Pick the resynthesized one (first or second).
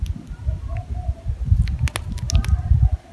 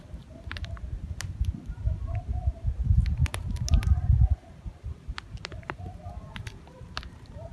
second